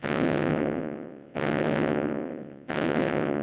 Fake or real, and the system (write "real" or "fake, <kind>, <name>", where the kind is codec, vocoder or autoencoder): fake, vocoder, WaveNeXt